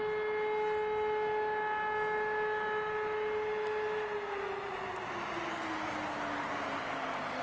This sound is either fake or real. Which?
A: real